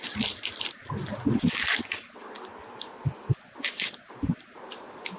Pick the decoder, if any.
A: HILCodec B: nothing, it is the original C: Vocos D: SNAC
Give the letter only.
B